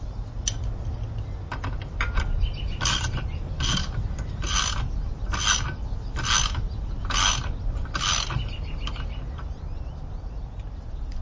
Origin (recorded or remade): recorded